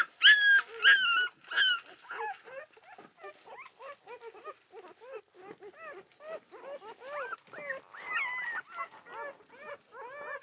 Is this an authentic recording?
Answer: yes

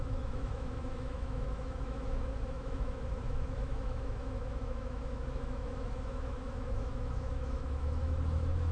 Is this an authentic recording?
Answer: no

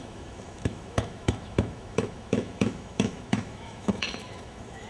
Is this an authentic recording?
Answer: no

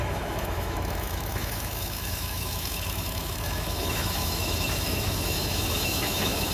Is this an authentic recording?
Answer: no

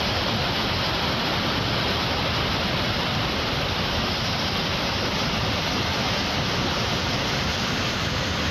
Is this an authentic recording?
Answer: yes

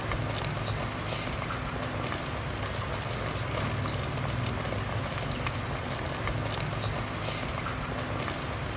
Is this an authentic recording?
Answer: yes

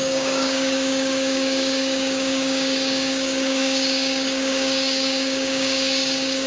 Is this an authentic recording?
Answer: no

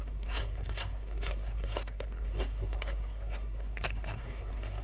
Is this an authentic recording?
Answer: no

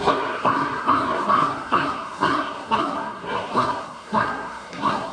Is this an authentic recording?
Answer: no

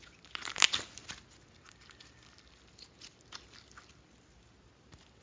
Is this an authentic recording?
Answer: yes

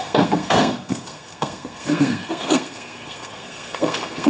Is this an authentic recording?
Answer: no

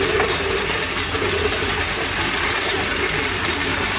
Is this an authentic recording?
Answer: yes